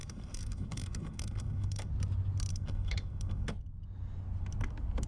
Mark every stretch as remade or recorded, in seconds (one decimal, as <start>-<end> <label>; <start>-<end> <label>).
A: 0.0-1.9 remade; 1.9-2.5 recorded; 2.5-3.5 remade; 3.5-5.1 recorded